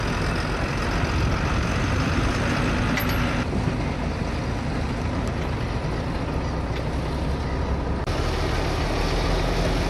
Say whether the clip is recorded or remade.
recorded